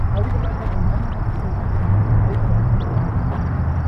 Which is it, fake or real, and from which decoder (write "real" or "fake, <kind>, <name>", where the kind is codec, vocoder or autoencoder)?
fake, vocoder, BigVGAN v2